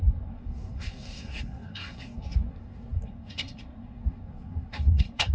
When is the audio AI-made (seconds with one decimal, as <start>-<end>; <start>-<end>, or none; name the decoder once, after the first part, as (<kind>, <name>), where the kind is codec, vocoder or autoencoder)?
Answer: 0.0-5.3 (codec, SNAC)